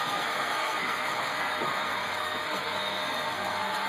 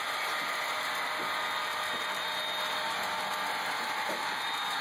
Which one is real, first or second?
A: second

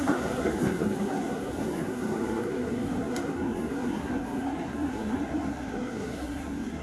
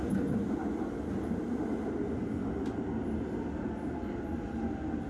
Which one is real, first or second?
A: second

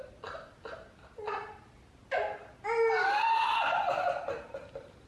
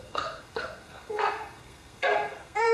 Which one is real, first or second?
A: first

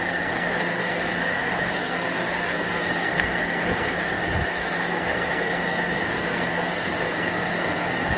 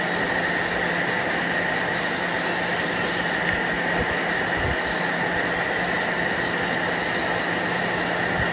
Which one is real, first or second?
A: second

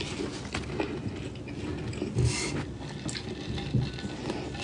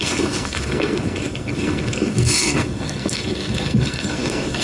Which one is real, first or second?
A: first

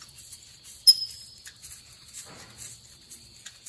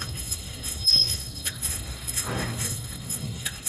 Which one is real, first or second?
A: first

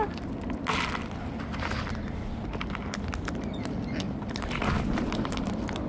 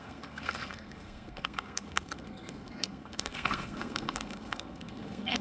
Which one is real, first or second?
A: first